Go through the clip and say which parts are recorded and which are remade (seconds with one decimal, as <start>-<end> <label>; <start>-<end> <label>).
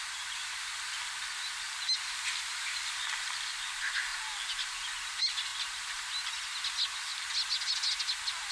0.0-8.5 recorded